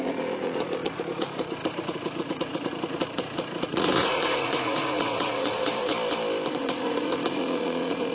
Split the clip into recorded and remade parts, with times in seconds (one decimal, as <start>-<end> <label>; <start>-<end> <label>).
0.0-5.9 remade; 5.9-6.5 recorded; 6.5-8.1 remade